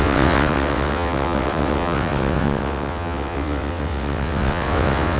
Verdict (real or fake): fake